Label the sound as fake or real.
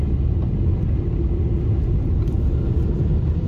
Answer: real